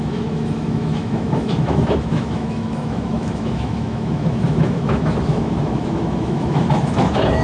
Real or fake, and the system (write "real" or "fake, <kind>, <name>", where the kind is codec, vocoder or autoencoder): fake, autoencoder, DAC-VAE